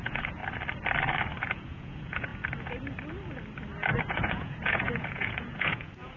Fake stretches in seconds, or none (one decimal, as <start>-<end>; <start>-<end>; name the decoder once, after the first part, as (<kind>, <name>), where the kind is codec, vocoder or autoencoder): 0.0-0.4 (vocoder, Vocos); 1.4-2.3; 4.0-6.2